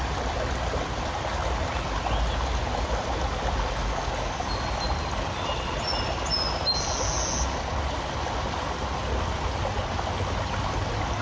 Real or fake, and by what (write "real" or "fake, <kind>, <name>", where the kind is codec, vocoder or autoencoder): real